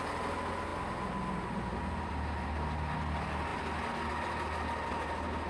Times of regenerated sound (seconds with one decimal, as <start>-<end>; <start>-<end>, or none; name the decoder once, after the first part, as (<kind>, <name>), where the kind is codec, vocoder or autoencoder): none

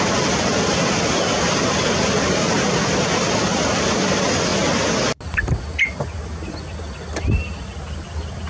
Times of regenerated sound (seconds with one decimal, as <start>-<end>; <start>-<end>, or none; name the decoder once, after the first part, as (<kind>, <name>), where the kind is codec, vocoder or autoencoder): none

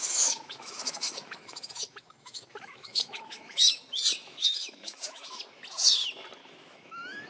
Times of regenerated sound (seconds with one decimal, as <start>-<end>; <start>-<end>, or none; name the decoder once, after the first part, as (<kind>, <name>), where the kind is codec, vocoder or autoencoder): 0.0-3.8 (autoencoder, DAC-VAE); 4.2-5.4; 6.4-7.3

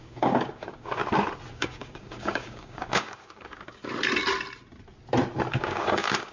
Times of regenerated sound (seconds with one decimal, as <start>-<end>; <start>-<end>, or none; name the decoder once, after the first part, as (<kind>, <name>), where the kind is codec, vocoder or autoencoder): 0.0-1.0 (codec, DAC); 1.5-3.8; 5.5-6.3

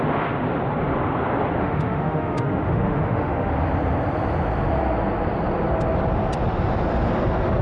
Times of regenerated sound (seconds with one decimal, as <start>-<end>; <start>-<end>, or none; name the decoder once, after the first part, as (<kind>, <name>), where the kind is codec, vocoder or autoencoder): 1.6-3.5 (autoencoder, DAC-VAE)

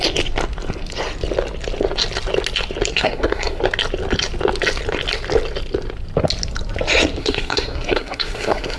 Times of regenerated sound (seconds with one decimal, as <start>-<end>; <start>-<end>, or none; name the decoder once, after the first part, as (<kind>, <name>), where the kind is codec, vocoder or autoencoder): 2.9-3.6 (codec, SNAC); 7.2-8.8

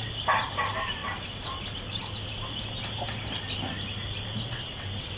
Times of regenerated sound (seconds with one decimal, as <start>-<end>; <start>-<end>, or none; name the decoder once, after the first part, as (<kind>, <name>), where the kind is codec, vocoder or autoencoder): 1.0-2.0 (vocoder, BigVGAN v2)